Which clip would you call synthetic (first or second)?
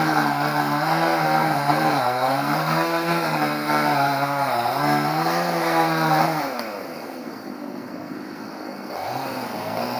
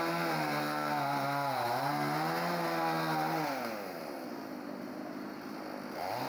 first